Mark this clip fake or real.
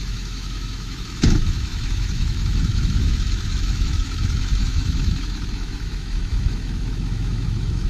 fake